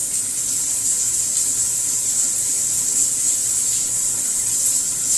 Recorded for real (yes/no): yes